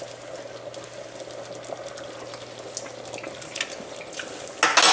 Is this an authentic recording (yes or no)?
yes